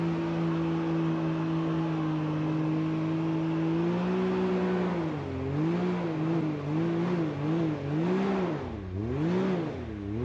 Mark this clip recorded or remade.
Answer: recorded